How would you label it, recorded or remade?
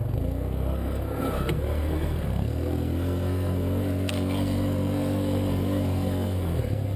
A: remade